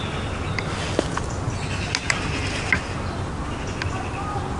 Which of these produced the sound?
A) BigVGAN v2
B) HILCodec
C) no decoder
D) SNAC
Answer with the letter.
C